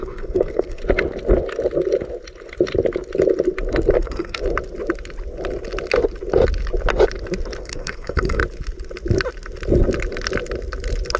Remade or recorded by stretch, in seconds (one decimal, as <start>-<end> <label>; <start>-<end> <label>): 0.0-0.8 remade; 0.8-4.0 recorded; 4.0-4.4 remade; 4.4-7.6 recorded; 7.6-8.4 remade; 8.4-11.2 recorded